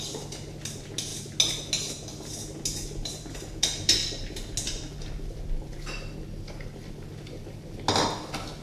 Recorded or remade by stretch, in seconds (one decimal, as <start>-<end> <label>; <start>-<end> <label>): 0.0-8.6 recorded